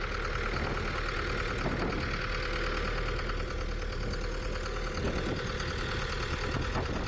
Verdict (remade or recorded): recorded